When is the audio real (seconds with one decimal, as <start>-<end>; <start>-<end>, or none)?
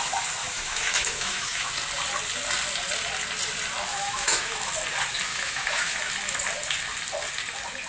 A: 0.0-0.4; 1.7-3.9; 4.7-5.3; 6.0-7.9